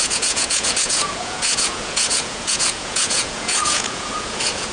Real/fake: fake